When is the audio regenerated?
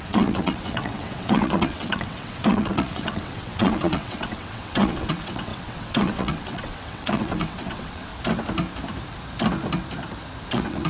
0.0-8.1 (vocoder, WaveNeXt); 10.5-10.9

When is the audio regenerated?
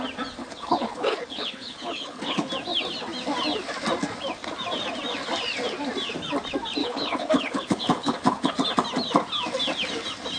0.4-2.5 (codec, HILCodec); 6.8-8.5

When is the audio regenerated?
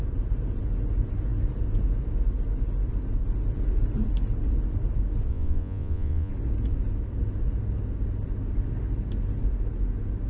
5.3-6.3 (vocoder, Vocos)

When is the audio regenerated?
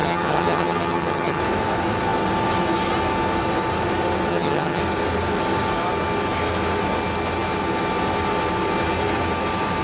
0.0-1.4 (vocoder, HiFi-GAN); 4.3-4.8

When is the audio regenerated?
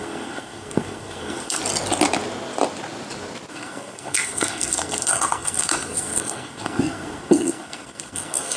0.0-1.6 (codec, SNAC); 3.5-8.6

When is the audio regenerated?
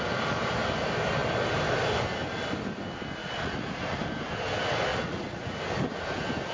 3.2-4.0 (vocoder, Vocos); 4.9-5.6